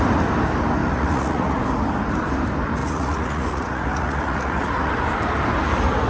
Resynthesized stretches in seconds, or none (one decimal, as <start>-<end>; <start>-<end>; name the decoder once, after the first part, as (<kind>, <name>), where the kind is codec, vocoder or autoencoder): 0.8-1.6 (vocoder, Vocos); 2.8-4.9